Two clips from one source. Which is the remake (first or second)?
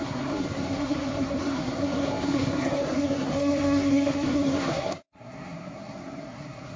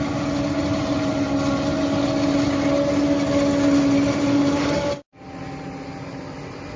first